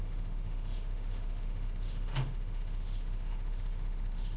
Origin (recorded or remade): remade